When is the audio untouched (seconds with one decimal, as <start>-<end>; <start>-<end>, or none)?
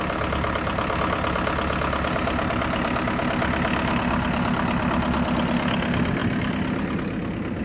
0.0-7.6